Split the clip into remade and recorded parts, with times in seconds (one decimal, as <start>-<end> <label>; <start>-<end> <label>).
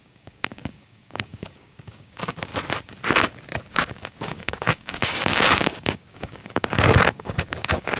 0.0-2.5 remade; 2.5-3.7 recorded; 3.7-8.0 remade